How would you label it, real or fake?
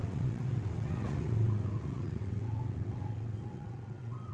fake